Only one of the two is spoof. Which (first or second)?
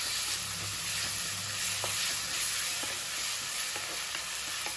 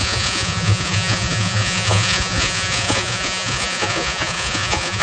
second